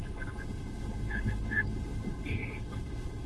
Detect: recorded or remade remade